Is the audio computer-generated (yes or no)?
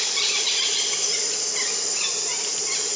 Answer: no